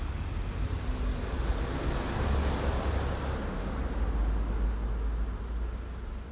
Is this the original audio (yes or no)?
yes